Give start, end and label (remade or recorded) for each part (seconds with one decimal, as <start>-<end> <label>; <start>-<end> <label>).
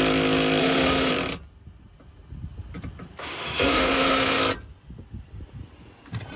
0.0-0.6 recorded; 0.6-1.1 remade; 1.1-3.2 recorded; 3.2-4.4 remade; 4.4-6.4 recorded